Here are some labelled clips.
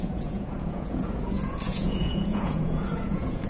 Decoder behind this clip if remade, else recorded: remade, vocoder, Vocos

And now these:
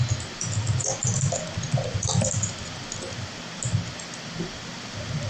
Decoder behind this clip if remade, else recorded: recorded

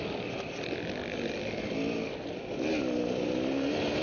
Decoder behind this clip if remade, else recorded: recorded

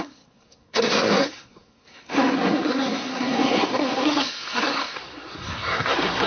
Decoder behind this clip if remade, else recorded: remade, codec, SNAC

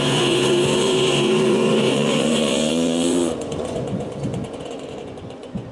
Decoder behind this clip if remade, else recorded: remade, vocoder, Vocos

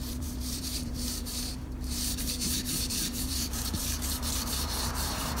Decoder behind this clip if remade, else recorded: remade, vocoder, BigVGAN v2